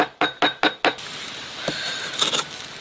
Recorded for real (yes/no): yes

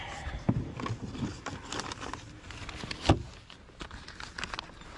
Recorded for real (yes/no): yes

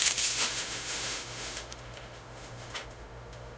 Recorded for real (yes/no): no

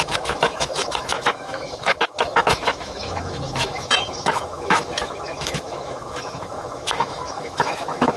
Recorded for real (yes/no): no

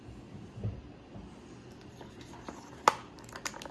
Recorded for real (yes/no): yes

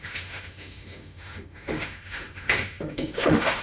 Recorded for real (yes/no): no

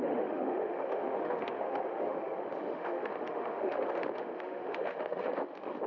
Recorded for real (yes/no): no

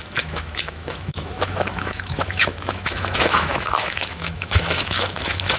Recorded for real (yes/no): no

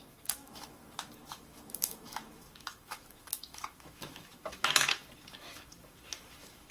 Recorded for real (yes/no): no